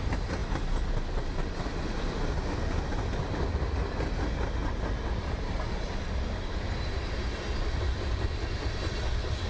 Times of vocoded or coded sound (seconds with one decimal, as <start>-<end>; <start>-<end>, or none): 4.6-8.8